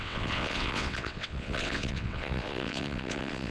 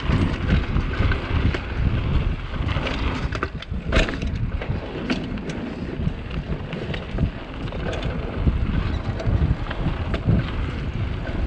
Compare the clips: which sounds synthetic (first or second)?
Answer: first